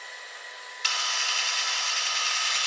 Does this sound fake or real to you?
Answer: real